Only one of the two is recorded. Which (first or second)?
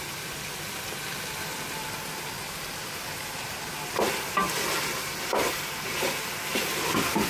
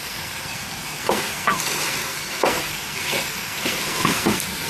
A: first